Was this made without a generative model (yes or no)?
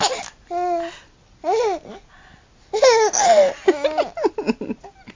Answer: yes